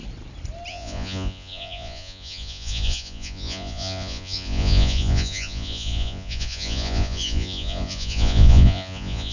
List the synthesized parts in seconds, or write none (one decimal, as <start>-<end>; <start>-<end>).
0.7-9.3